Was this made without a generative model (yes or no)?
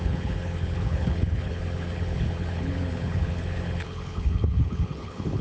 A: no